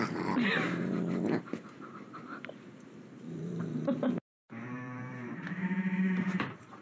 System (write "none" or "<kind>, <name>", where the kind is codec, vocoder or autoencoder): vocoder, BigVGAN v2